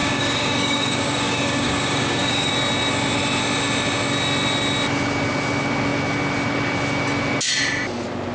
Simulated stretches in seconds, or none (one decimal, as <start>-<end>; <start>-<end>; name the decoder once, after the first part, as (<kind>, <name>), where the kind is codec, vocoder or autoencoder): 0.0-2.5 (codec, DAC)